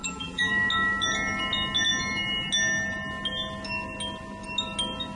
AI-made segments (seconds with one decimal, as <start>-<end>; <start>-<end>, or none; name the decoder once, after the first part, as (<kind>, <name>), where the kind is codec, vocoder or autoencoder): 0.0-0.5 (vocoder, BigVGAN v2)